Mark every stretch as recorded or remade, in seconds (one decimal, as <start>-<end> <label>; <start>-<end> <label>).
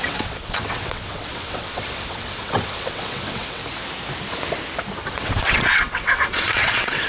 0.0-3.6 remade; 3.6-5.0 recorded; 5.0-7.1 remade